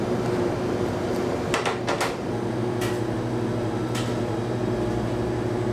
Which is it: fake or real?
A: real